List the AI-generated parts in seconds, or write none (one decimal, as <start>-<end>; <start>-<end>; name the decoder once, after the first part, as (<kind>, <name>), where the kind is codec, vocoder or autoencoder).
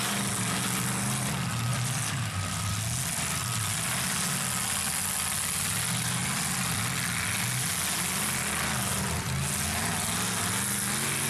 none